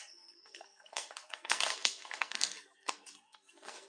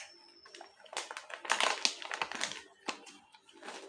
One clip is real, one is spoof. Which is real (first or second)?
second